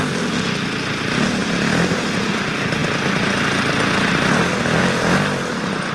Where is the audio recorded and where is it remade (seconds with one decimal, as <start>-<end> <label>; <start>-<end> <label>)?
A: 0.0-5.9 recorded